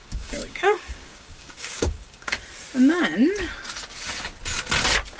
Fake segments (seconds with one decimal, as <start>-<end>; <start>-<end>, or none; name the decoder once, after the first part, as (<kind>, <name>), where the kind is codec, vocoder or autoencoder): 0.0-2.4 (codec, DAC)